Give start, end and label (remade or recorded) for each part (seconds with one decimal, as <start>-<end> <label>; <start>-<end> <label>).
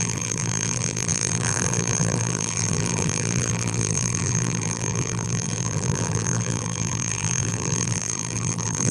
0.0-8.9 remade